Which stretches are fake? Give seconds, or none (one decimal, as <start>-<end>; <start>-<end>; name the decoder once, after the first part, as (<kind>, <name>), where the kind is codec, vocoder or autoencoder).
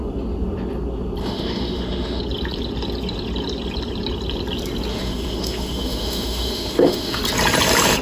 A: 1.2-2.2 (autoencoder, DAC-VAE); 4.9-7.2